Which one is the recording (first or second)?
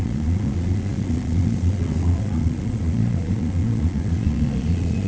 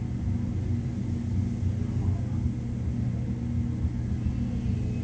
second